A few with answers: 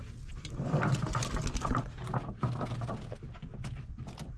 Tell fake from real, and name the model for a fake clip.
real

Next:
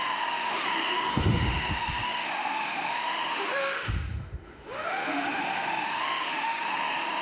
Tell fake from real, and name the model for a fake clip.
fake, autoencoder, DAC-VAE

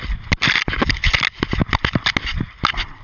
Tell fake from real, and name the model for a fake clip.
real